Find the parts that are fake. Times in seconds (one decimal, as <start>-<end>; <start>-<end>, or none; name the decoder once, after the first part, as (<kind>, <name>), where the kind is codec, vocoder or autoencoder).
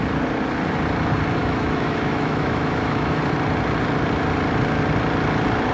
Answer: 1.4-3.2 (autoencoder, DAC-VAE)